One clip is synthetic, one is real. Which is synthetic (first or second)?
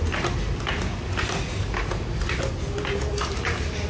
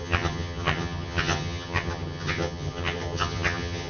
second